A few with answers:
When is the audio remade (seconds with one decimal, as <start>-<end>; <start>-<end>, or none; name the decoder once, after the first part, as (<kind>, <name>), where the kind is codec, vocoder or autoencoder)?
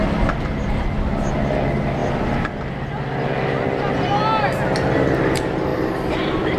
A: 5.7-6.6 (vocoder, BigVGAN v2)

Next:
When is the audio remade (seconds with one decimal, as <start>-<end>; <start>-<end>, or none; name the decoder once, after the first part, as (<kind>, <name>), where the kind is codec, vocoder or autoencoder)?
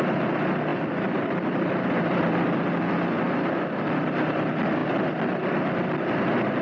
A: 0.7-2.2 (vocoder, BigVGAN v2)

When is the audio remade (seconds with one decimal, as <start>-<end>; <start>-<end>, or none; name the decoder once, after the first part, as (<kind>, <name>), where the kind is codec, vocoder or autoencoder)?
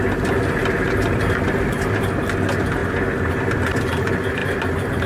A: none